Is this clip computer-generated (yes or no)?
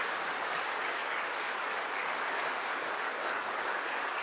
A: yes